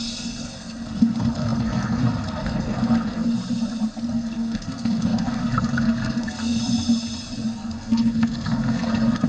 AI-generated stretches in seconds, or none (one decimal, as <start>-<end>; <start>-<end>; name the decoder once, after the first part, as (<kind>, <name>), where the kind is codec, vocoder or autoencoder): 0.0-3.3 (codec, SNAC); 4.1-6.6; 7.5-9.3